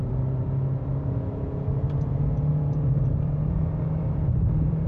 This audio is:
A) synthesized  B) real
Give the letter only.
A